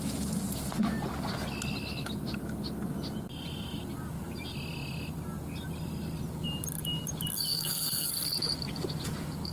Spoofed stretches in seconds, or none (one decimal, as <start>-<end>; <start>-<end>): 7.5-8.1